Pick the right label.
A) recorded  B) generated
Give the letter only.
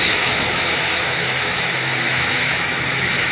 B